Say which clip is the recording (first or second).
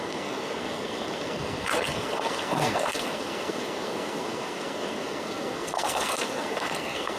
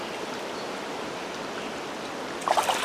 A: second